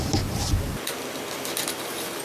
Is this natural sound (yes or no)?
yes